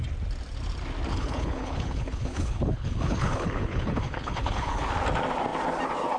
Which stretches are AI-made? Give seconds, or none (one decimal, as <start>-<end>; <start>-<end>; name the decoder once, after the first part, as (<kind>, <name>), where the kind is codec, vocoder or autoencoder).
1.1-4.8 (codec, HILCodec)